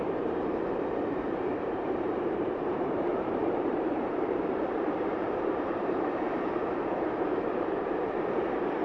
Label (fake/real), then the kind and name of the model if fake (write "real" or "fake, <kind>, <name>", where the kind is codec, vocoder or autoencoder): fake, vocoder, BigVGAN v2